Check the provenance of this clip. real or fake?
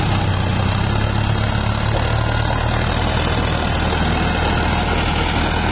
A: real